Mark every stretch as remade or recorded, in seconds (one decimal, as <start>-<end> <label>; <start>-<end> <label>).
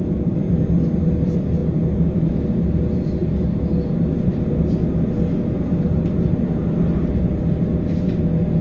0.0-8.6 recorded